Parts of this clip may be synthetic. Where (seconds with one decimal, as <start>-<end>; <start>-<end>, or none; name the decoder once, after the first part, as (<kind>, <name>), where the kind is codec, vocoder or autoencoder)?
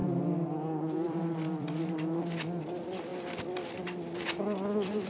0.0-5.1 (vocoder, BigVGAN v2)